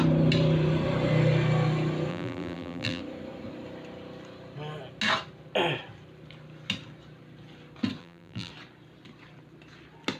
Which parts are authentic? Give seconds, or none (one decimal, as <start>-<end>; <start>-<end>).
0.0-2.1; 3.0-8.0; 8.5-10.2